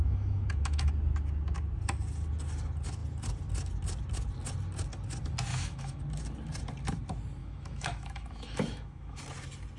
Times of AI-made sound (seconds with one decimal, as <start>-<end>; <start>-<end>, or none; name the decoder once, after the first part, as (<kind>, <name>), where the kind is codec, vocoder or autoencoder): 0.0-0.9 (autoencoder, DAC-VAE); 5.5-6.0; 7.4-9.2